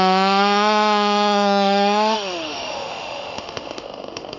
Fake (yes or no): yes